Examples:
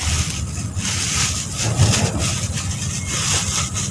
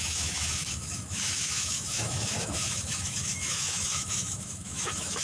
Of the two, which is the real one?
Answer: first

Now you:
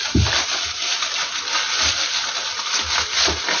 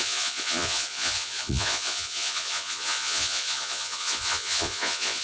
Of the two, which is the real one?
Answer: first